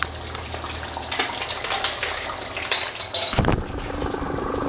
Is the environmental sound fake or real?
real